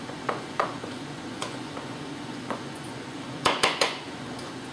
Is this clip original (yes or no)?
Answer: no